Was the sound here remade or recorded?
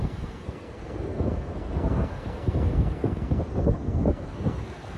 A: remade